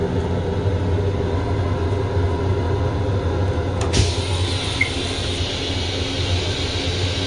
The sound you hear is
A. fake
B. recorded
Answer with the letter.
B